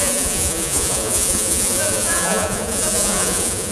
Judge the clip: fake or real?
fake